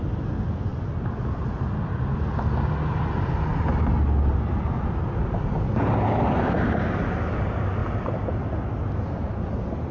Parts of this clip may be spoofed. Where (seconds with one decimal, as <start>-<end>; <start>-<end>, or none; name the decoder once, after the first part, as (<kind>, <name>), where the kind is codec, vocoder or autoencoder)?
none